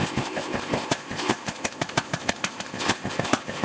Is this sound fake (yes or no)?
yes